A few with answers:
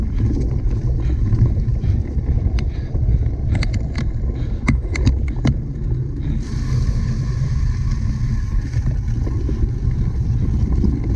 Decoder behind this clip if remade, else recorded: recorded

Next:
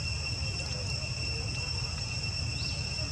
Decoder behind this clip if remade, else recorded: recorded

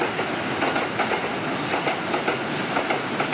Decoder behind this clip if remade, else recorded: recorded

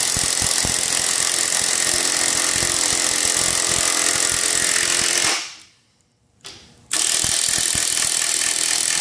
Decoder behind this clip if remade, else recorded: recorded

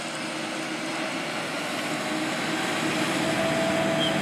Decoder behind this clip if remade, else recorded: recorded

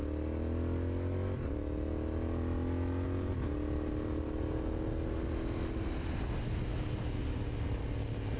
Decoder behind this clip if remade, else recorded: recorded